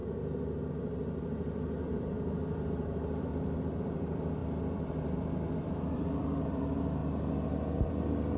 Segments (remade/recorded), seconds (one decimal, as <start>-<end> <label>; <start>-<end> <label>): 0.0-3.3 remade; 3.3-3.8 recorded; 3.8-7.0 remade; 7.0-7.9 recorded; 7.9-8.4 remade